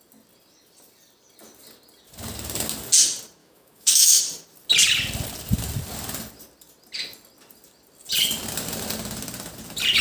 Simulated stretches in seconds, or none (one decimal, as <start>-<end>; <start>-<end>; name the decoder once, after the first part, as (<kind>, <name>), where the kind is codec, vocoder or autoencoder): 3.4-4.2 (autoencoder, DAC-VAE)